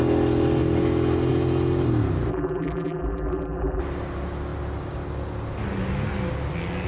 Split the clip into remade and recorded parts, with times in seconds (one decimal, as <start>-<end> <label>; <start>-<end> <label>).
0.0-2.3 recorded; 2.3-3.8 remade; 3.8-6.9 recorded